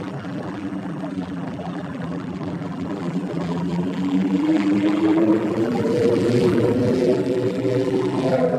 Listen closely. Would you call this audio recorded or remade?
remade